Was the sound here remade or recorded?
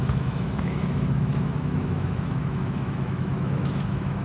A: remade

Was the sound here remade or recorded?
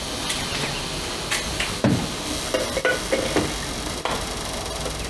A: recorded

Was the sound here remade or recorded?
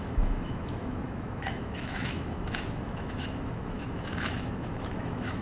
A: remade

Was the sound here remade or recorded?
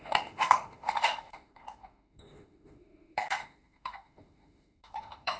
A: remade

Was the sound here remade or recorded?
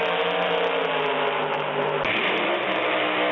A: recorded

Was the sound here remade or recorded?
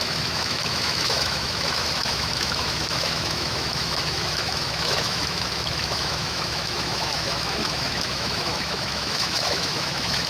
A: remade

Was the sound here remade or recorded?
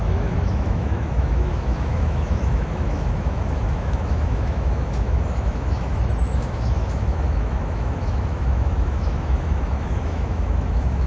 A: remade